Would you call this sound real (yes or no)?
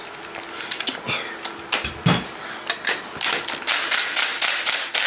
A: yes